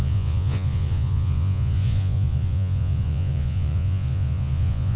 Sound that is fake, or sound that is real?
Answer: fake